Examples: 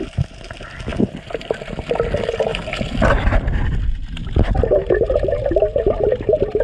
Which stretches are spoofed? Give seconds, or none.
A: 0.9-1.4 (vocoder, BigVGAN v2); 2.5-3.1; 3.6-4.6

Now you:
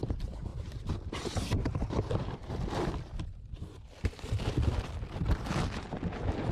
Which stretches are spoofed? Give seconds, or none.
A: 0.5-4.4 (vocoder, BigVGAN v2)

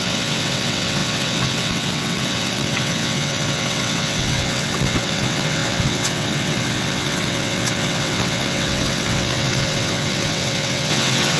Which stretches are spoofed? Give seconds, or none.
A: 0.0-11.4 (vocoder, WaveNeXt)

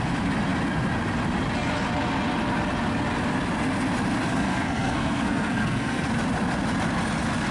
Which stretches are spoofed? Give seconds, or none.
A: 4.3-6.1 (codec, SNAC)

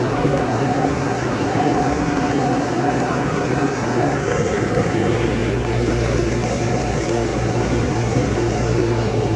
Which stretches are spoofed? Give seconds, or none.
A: 0.0-9.4 (codec, SNAC)

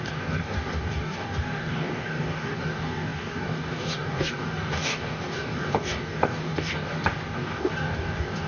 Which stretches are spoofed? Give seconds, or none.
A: 0.0-8.5 (codec, DAC)

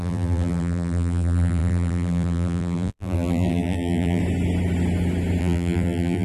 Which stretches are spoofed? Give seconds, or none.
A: 0.0-4.2 (vocoder, BigVGAN v2); 5.4-6.2

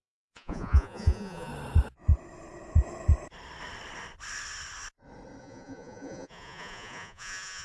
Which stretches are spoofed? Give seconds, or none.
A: 0.0-1.5 (vocoder, Vocos); 5.4-7.6